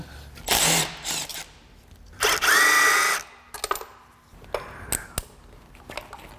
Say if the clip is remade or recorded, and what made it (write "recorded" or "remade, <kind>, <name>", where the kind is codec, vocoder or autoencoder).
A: recorded